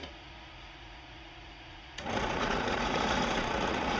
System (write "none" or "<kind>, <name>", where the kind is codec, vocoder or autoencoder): vocoder, Vocos